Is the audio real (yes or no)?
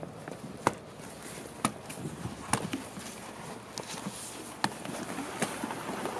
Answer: yes